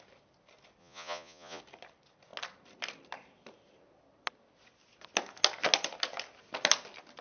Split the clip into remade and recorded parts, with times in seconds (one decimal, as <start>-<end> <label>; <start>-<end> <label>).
0.0-0.8 recorded; 0.8-1.6 remade; 1.6-7.2 recorded